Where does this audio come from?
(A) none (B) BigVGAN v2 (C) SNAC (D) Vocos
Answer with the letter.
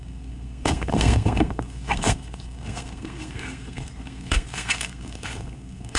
C